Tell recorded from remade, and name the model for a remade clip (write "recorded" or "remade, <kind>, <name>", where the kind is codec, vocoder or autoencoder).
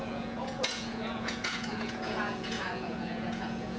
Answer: remade, vocoder, Vocos